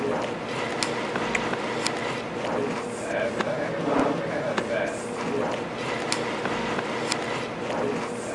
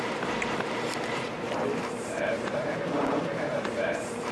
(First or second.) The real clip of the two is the first